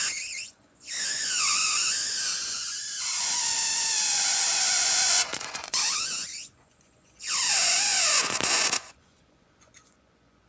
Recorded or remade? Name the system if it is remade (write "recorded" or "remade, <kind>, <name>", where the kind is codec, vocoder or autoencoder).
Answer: remade, vocoder, Vocos